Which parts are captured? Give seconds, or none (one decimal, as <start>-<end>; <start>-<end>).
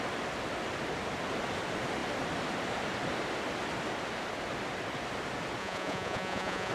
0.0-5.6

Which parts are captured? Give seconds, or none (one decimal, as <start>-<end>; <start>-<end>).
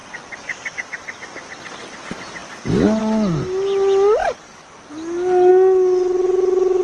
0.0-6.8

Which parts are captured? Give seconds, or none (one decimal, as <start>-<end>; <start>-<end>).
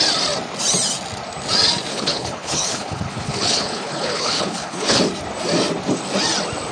0.0-1.9; 5.0-6.7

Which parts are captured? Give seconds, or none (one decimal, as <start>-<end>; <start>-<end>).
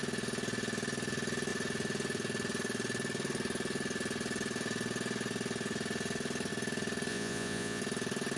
0.0-7.1; 7.8-8.4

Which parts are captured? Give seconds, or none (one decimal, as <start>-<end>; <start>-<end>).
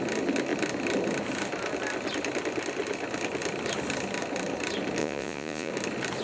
0.0-5.0; 5.7-6.2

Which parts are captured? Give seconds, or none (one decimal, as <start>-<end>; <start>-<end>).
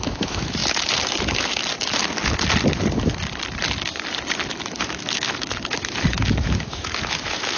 1.6-4.5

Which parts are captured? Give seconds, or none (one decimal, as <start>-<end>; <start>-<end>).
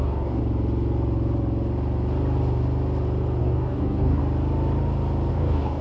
0.4-3.4; 4.2-5.3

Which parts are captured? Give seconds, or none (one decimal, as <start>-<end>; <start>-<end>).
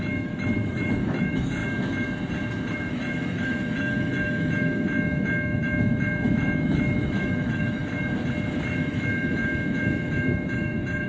1.6-2.7; 7.8-8.7